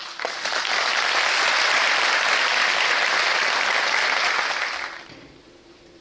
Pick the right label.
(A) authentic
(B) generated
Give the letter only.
A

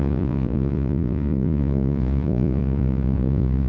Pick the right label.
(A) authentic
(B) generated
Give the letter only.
B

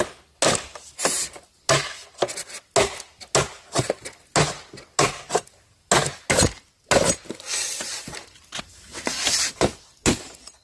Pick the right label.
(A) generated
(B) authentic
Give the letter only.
B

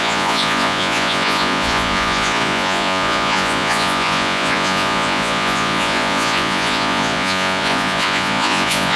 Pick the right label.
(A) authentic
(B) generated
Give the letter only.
B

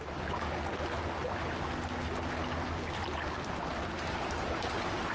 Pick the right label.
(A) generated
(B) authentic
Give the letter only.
B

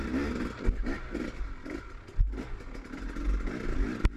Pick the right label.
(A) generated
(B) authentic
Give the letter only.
B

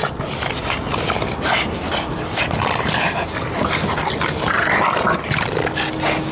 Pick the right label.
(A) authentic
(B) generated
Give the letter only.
A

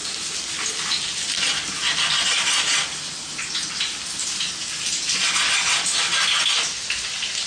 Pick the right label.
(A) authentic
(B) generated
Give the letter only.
A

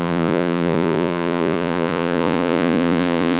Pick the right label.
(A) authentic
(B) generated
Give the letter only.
B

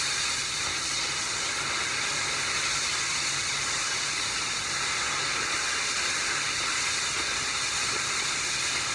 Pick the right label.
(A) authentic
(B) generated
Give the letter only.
A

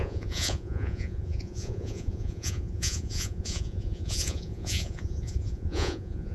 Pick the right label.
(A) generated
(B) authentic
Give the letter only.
A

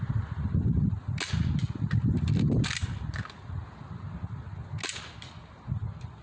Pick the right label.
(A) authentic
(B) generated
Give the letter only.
A